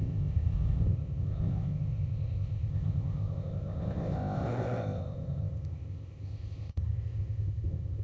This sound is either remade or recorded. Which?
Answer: remade